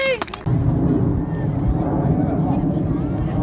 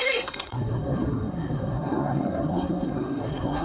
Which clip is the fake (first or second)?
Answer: second